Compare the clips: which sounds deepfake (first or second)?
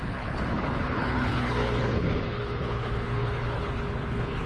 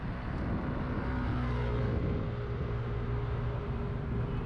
first